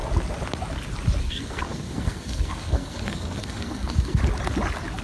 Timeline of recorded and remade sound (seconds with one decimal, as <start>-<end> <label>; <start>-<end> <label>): 0.0-1.2 recorded; 1.2-4.2 remade; 4.2-5.0 recorded

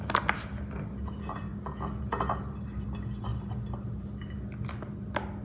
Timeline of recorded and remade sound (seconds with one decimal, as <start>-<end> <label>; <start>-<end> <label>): 0.0-5.4 recorded

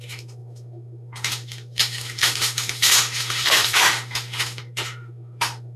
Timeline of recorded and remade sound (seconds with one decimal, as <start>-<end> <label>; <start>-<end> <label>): 0.0-5.8 remade

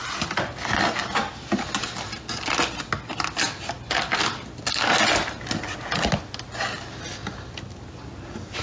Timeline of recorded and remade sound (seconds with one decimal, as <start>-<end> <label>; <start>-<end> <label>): 0.0-8.6 recorded